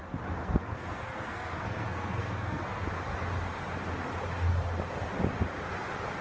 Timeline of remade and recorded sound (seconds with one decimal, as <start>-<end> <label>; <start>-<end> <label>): 0.0-0.4 recorded; 0.4-2.8 remade; 2.8-6.2 recorded